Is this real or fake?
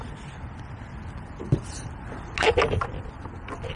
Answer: real